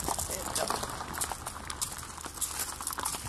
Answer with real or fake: real